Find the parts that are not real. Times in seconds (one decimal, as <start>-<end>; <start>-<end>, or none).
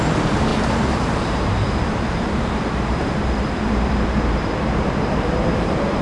0.0-6.0